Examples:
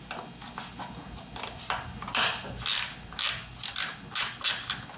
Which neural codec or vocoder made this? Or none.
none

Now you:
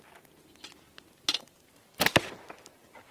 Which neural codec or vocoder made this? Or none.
none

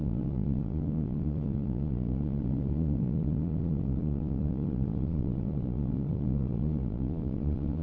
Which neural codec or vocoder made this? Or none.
vocoder, Vocos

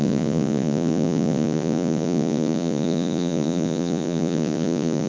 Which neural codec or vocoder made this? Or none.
vocoder, Vocos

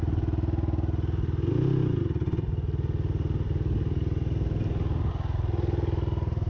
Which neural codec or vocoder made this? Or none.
none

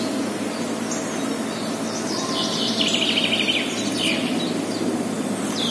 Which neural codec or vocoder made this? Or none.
none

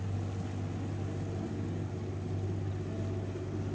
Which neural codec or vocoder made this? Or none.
none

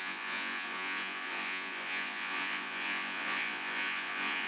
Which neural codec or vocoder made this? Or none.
vocoder, Vocos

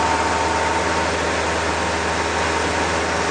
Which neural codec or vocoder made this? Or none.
none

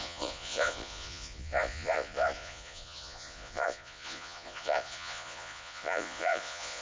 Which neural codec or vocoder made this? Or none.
vocoder, Vocos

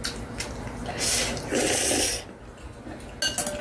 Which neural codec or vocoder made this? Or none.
none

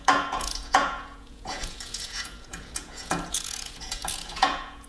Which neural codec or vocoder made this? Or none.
vocoder, Vocos